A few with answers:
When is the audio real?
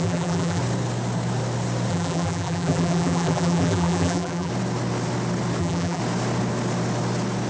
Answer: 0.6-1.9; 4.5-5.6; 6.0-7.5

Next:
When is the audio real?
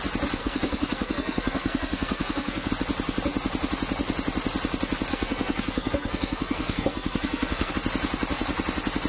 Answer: 0.0-0.4; 2.7-5.1; 7.7-9.1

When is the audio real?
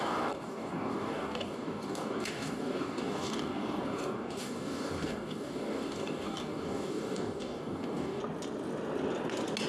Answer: 8.2-9.7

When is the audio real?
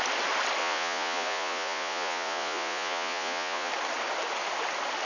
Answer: 0.0-0.6; 3.7-5.1